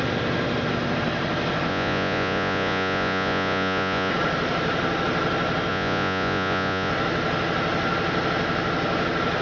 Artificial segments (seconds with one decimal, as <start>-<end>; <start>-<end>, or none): 1.7-4.1; 5.7-6.9